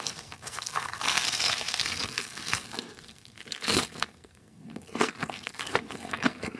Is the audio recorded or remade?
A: remade